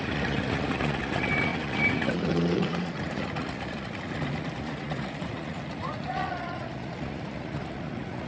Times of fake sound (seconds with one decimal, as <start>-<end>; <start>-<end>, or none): 0.0-8.3